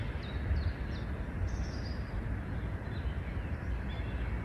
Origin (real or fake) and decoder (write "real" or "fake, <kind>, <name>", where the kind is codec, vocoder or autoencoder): real